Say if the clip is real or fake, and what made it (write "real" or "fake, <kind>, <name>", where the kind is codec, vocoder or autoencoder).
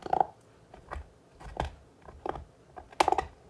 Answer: real